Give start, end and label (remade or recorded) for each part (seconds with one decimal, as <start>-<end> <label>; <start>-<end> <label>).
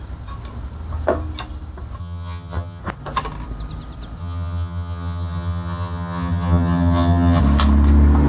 0.0-2.0 recorded; 2.0-2.8 remade; 2.8-4.2 recorded; 4.2-7.4 remade; 7.4-8.3 recorded